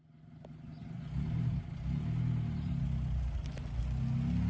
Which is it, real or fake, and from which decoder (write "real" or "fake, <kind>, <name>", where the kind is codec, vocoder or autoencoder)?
real